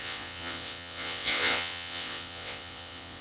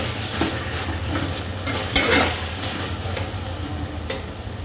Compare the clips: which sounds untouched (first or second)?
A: second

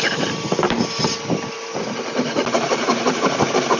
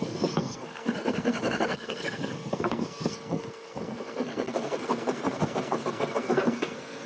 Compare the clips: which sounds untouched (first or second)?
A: first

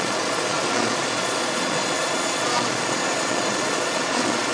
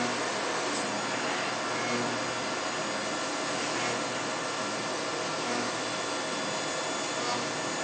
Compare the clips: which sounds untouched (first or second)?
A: second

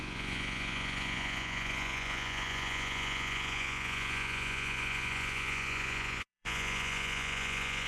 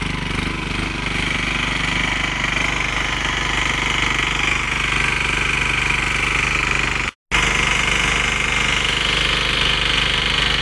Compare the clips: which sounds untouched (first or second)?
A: second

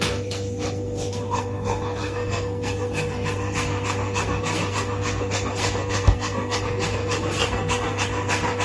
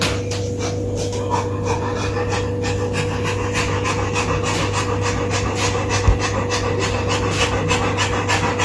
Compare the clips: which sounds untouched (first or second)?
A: second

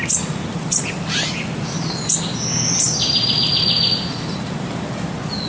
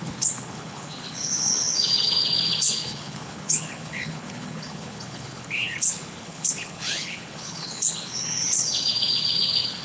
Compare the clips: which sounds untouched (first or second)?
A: first